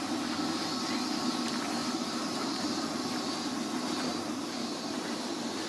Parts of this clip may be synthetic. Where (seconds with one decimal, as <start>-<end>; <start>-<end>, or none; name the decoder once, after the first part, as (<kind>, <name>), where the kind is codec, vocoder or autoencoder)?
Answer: 1.8-2.9 (vocoder, BigVGAN v2); 4.1-5.3